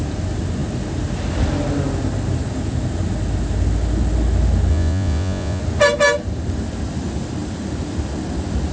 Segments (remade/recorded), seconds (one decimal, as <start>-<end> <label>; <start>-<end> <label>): 0.0-4.7 recorded; 4.7-5.6 remade; 5.6-8.7 recorded